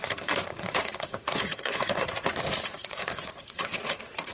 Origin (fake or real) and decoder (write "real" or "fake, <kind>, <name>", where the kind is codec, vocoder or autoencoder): fake, vocoder, Vocos